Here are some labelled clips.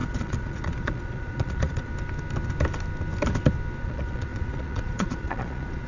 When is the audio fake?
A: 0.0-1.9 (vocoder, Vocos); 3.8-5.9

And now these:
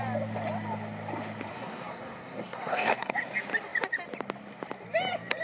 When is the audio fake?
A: 1.5-3.1 (codec, SNAC)

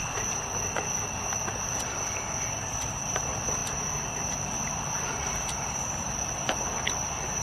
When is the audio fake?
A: 2.5-3.6 (vocoder, BigVGAN v2); 4.5-7.4